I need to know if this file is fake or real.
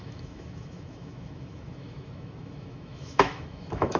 fake